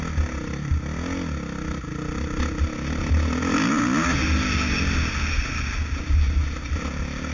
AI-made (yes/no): no